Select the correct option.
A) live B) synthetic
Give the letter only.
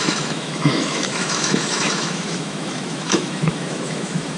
B